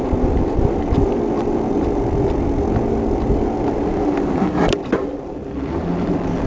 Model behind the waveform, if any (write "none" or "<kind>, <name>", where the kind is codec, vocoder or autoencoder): none